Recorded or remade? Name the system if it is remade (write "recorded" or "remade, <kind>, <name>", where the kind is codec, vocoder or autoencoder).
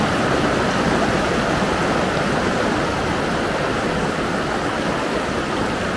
recorded